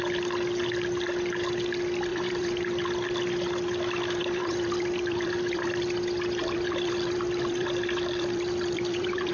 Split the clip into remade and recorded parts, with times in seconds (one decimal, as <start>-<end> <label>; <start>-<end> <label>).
0.0-2.1 recorded; 2.1-5.8 remade; 5.8-6.4 recorded; 6.4-9.3 remade